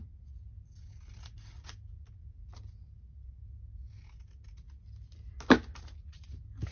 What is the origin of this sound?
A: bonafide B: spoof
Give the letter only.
A